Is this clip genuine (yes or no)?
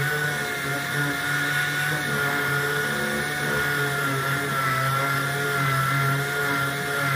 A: yes